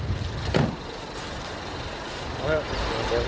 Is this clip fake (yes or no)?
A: no